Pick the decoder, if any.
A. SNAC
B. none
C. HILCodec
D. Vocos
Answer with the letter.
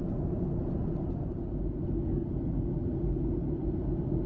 B